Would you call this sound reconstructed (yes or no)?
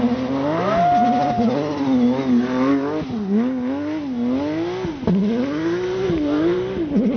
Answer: no